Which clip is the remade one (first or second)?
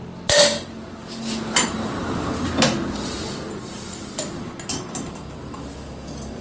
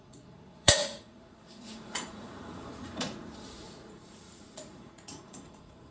second